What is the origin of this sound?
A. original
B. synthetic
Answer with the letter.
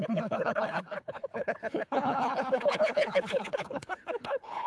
B